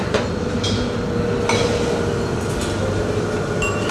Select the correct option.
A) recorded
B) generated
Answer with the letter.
A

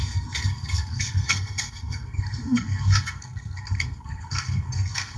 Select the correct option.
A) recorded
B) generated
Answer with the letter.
B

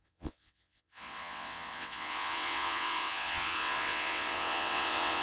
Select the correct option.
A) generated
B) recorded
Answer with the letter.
A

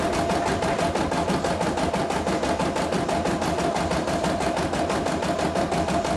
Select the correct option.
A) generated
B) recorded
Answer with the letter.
B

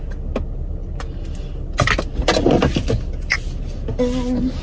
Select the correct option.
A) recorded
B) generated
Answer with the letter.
A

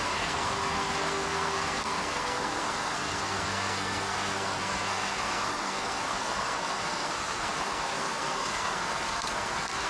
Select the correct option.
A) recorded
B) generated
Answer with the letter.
B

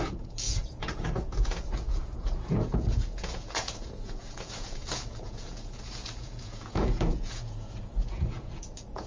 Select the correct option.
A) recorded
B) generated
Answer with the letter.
B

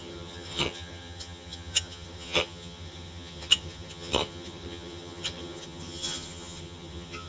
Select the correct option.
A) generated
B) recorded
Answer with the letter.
A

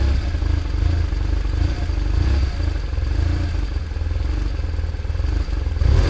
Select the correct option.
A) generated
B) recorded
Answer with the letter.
B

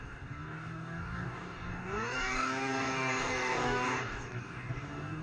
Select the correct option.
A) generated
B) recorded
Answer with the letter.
A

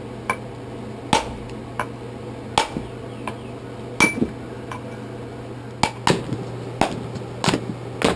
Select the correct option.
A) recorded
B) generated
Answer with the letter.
A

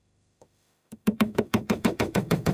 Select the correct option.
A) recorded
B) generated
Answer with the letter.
B